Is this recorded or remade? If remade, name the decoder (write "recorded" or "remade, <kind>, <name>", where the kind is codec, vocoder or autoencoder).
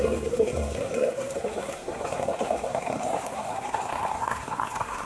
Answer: remade, codec, SNAC